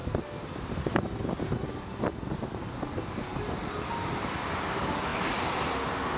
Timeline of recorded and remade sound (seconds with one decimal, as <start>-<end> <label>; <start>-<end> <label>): 0.0-6.2 recorded